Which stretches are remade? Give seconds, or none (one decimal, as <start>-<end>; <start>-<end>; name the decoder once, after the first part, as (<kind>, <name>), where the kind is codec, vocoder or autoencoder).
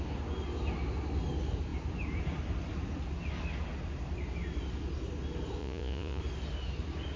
5.6-6.2 (vocoder, Vocos)